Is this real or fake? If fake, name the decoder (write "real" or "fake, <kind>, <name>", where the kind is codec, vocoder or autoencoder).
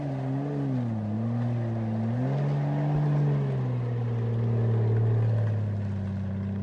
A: real